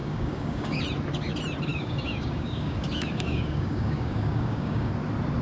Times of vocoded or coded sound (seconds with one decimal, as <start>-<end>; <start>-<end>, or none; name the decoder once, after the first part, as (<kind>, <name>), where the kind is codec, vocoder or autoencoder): 0.0-0.8 (codec, DAC); 1.7-4.9